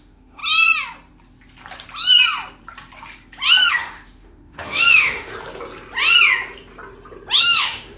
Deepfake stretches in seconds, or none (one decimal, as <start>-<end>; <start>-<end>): 0.0-0.4; 3.7-5.3; 7.4-8.0